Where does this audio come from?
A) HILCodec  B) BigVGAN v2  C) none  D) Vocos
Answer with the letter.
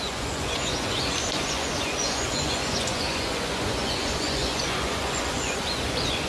D